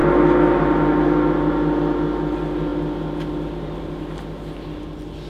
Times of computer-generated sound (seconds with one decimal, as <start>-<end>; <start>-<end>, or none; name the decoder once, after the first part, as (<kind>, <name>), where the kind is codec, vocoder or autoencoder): none